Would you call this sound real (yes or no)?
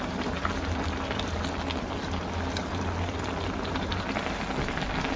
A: yes